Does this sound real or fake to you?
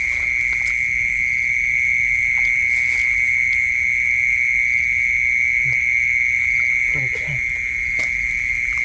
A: real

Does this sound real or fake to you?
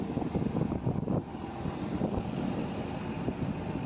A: real